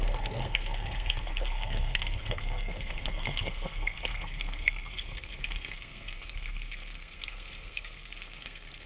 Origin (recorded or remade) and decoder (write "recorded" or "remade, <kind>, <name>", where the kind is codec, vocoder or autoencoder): remade, codec, SNAC